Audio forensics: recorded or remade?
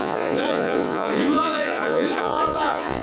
remade